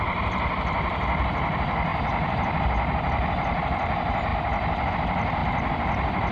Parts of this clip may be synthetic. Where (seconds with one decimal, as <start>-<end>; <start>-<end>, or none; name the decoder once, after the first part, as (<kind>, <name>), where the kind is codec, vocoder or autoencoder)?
1.9-2.5 (vocoder, BigVGAN v2)